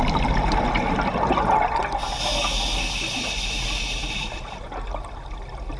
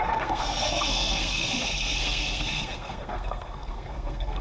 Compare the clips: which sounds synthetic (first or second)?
second